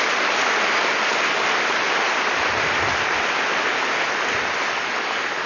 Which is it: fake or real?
real